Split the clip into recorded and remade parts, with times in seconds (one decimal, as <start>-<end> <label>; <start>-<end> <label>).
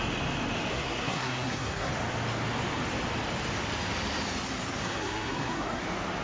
0.0-0.7 recorded; 0.7-1.9 remade; 1.9-4.8 recorded; 4.8-5.8 remade; 5.8-6.2 recorded